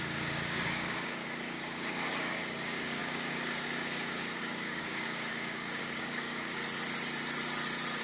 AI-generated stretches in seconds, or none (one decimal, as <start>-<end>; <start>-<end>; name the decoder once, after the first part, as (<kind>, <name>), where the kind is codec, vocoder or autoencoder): 0.0-6.6 (codec, DAC)